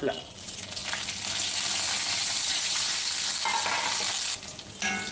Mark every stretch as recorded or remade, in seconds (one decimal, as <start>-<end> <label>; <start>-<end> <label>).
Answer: 0.0-0.8 remade; 0.8-2.1 recorded; 2.1-3.0 remade; 3.0-5.1 recorded